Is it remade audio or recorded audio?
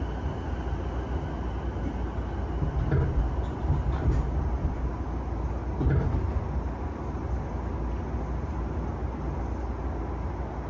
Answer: recorded